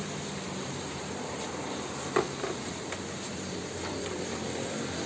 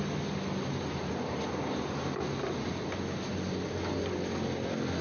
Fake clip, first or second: first